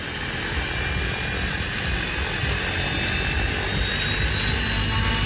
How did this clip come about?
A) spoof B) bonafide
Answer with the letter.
B